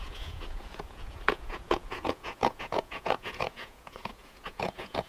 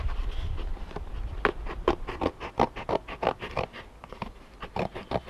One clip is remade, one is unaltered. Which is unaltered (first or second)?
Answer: second